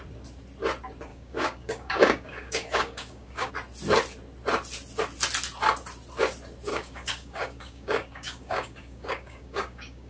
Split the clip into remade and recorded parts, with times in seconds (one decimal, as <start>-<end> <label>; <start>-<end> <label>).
0.0-1.1 recorded; 1.1-3.5 remade; 3.5-6.7 recorded; 6.7-10.1 remade